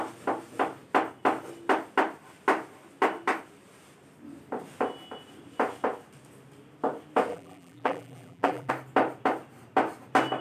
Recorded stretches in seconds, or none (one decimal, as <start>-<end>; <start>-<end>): 0.0-7.3; 8.7-10.4